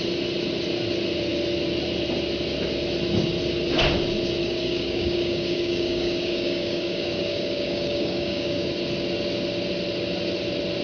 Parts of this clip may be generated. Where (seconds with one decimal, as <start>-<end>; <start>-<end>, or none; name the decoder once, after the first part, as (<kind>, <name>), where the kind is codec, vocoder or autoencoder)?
4.4-8.7 (codec, DAC)

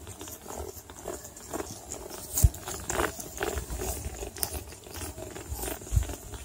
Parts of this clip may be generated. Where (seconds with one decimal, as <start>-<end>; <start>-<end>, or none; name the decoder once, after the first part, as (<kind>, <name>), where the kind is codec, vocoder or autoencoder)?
none